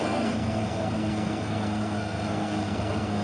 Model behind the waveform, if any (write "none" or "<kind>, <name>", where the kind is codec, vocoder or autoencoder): codec, SNAC